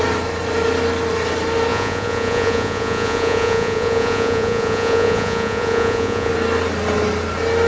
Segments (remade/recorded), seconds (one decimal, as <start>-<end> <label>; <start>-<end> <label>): 0.0-1.7 recorded; 1.7-6.3 remade; 6.3-7.7 recorded